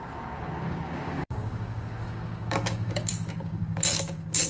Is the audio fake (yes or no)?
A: yes